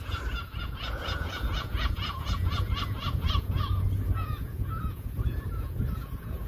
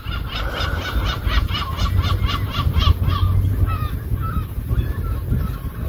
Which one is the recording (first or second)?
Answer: second